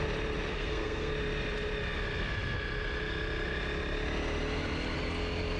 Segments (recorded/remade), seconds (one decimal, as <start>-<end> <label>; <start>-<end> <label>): 0.0-0.5 recorded; 0.5-1.1 remade; 1.1-5.6 recorded